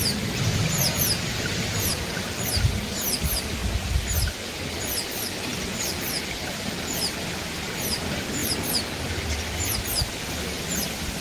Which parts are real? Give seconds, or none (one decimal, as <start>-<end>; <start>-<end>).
3.6-4.7; 8.4-10.3